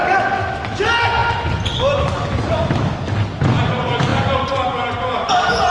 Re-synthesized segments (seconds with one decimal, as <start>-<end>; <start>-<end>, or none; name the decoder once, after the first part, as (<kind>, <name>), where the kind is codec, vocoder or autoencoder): none